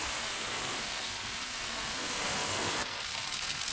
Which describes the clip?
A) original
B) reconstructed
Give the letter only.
B